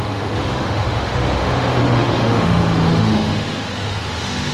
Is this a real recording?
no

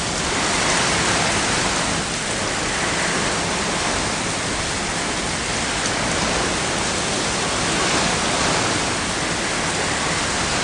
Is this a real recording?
yes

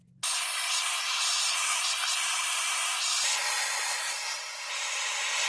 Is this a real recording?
yes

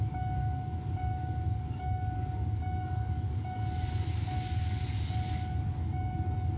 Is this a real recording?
no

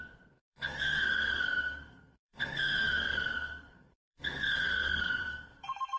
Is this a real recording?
no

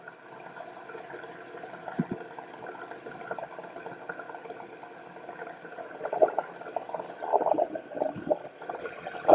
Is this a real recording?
no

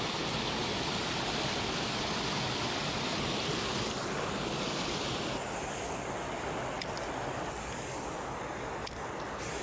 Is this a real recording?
yes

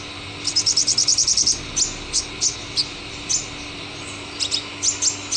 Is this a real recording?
yes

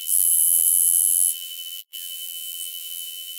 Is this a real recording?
no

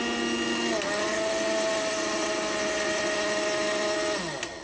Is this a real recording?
yes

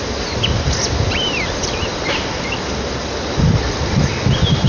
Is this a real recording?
yes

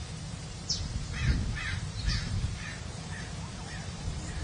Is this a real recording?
no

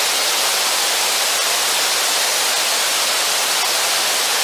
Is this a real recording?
yes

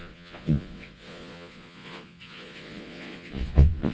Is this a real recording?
no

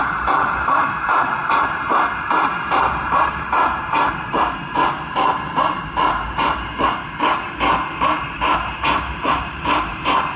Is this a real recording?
no